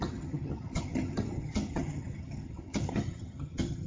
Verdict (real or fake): fake